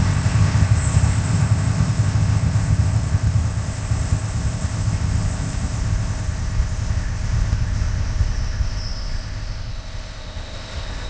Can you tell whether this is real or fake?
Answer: fake